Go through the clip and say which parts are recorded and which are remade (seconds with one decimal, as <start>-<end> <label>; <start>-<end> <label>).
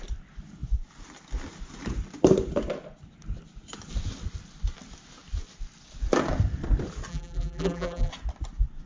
0.0-7.1 recorded; 7.1-8.1 remade; 8.1-8.9 recorded